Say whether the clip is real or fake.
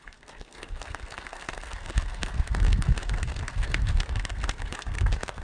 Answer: fake